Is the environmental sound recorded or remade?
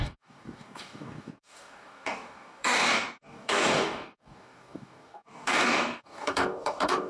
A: remade